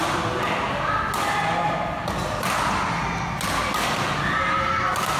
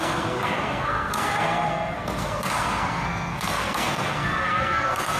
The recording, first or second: first